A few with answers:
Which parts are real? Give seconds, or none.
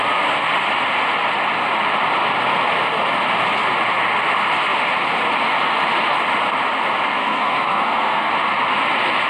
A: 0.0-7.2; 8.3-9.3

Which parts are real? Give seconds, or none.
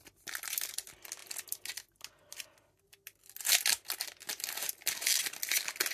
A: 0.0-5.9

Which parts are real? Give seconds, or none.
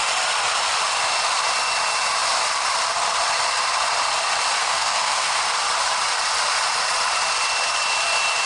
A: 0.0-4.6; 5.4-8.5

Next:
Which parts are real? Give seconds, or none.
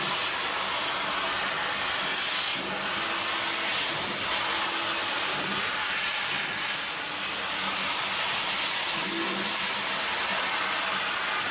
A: 0.0-11.5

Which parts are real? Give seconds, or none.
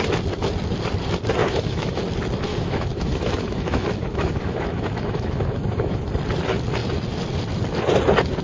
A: 0.0-1.4; 2.0-2.5; 6.0-8.4